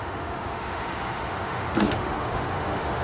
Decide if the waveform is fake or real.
fake